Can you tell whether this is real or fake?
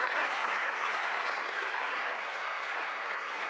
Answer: fake